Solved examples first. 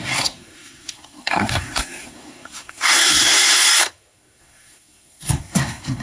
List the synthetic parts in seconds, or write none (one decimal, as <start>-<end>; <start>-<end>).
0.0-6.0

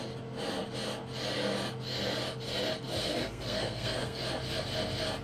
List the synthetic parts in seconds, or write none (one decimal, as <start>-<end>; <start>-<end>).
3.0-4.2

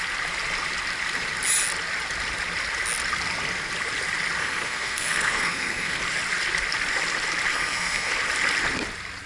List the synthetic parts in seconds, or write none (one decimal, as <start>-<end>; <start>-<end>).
4.4-6.0; 7.5-8.1

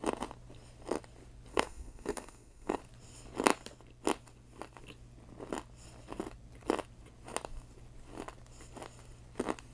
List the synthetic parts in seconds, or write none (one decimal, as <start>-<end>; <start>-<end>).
1.5-2.8

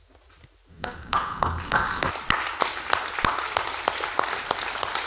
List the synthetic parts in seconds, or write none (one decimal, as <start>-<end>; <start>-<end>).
0.7-2.1

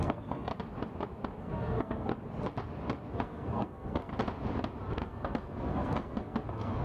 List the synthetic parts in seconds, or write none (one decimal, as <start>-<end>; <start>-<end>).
0.0-0.5; 1.4-2.1; 3.1-4.1; 4.9-6.8